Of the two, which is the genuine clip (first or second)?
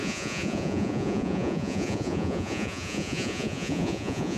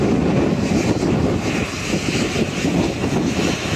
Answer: second